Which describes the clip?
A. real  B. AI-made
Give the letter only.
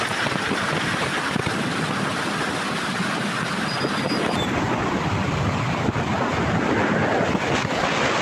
A